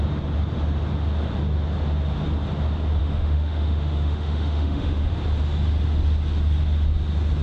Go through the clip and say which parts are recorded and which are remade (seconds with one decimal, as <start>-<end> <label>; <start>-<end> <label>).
0.0-3.0 recorded; 3.0-5.1 remade; 5.1-7.4 recorded